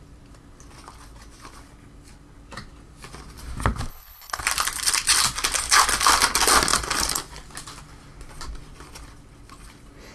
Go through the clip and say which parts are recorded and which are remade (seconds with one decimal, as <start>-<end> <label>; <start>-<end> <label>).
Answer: 0.0-3.9 recorded; 3.9-4.4 remade; 4.4-10.1 recorded